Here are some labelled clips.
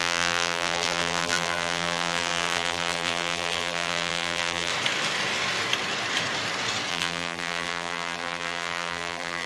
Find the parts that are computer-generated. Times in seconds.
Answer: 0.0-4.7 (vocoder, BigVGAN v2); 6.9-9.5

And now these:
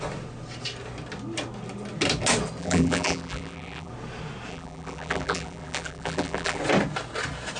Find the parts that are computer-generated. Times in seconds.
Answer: 2.6-3.9 (vocoder, BigVGAN v2); 4.5-6.6

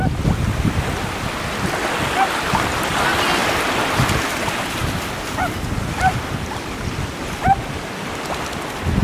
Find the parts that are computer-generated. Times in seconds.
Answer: 3.4-4.0 (vocoder, BigVGAN v2)

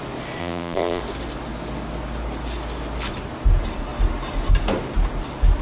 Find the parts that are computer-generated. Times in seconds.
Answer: 0.4-1.0 (vocoder, BigVGAN v2)

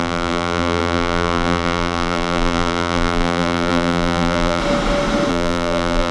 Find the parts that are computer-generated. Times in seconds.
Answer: 0.0-4.6 (vocoder, BigVGAN v2); 5.3-6.1

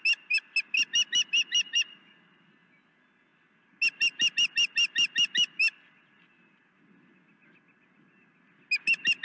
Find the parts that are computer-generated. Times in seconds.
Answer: none